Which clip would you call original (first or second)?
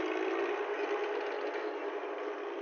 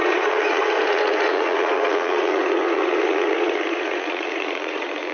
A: first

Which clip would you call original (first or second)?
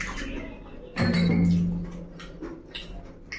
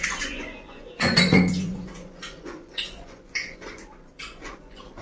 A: first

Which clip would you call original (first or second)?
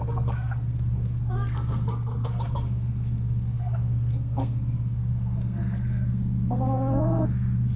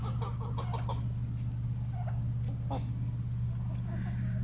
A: second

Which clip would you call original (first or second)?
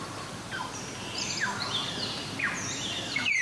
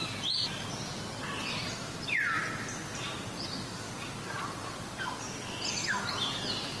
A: second